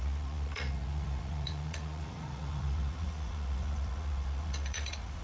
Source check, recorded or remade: remade